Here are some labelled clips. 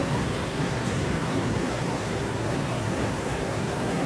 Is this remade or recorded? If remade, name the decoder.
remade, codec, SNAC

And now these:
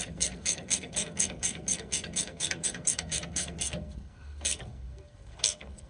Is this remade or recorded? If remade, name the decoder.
remade, codec, SNAC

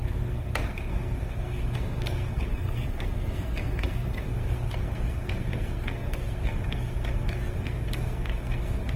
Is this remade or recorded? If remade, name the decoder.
remade, codec, SNAC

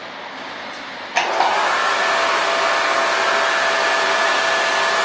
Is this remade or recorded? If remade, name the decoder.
recorded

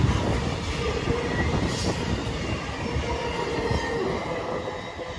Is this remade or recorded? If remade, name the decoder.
recorded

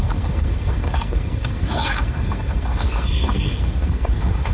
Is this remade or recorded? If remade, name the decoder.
remade, codec, SNAC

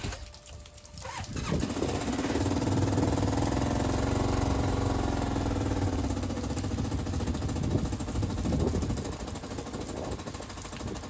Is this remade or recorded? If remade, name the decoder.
recorded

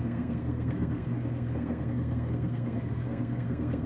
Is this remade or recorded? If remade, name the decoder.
remade, codec, SNAC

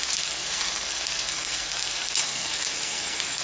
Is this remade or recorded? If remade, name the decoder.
remade, codec, SNAC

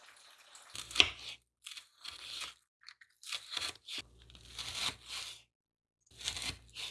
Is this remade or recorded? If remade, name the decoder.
recorded